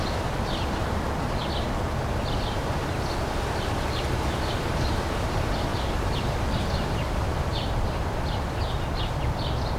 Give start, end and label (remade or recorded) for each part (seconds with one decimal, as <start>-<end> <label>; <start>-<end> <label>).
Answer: 0.0-5.7 recorded; 5.7-6.3 remade; 6.3-7.5 recorded; 7.5-8.1 remade; 8.1-9.8 recorded